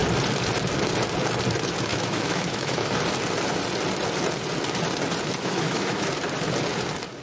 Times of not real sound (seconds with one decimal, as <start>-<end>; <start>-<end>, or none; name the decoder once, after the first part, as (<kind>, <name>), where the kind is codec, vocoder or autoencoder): 1.9-3.0 (autoencoder, DAC-VAE); 5.4-6.1